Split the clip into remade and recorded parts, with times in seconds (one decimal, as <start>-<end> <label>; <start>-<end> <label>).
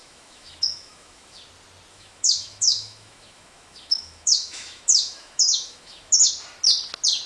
0.0-1.4 remade; 1.4-1.9 recorded; 1.9-6.3 remade; 6.3-7.3 recorded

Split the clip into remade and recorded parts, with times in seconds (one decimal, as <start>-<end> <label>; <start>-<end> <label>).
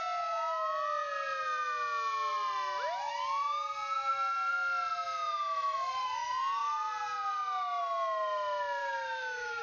0.0-8.8 recorded; 8.8-9.6 remade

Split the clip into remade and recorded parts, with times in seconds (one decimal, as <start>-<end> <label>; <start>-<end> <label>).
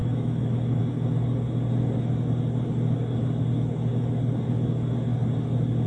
0.0-0.8 remade; 0.8-5.9 recorded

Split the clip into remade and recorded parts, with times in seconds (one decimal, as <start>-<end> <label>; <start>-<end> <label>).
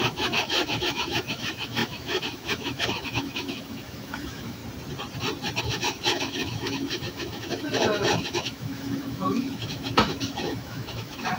0.0-4.6 remade; 4.6-5.6 recorded; 5.6-11.4 remade